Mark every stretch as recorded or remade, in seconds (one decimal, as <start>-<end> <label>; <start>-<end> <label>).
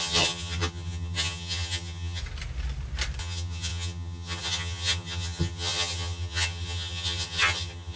0.0-2.2 remade; 2.2-3.2 recorded; 3.2-8.0 remade